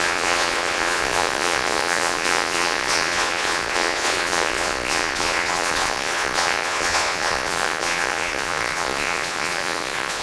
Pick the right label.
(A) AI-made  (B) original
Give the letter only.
A